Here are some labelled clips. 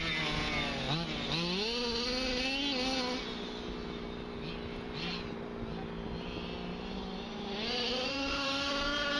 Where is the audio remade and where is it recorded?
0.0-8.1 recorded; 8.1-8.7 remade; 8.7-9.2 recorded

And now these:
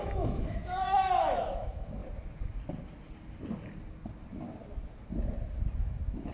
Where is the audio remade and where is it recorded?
0.0-2.0 remade; 2.0-5.8 recorded; 5.8-6.3 remade